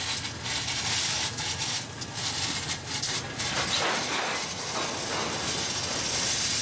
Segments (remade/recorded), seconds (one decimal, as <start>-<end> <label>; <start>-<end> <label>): 0.0-6.6 recorded